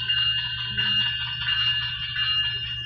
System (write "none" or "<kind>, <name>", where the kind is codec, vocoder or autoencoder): none